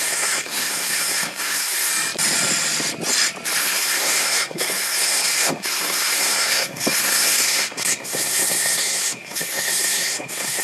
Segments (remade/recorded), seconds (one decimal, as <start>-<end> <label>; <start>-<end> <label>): 0.0-1.9 remade; 1.9-3.6 recorded; 3.6-10.6 remade